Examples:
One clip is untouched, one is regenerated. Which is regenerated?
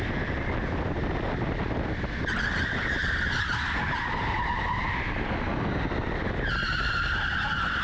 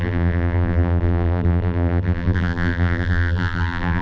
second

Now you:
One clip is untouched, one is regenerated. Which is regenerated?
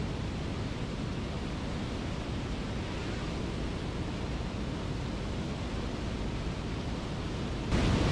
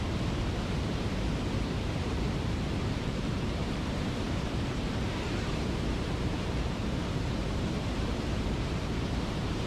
second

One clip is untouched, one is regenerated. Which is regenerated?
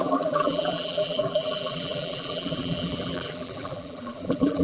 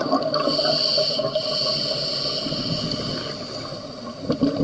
first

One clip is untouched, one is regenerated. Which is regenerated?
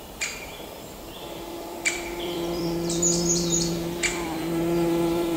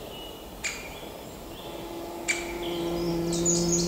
first